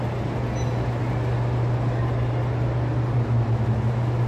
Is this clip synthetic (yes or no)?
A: no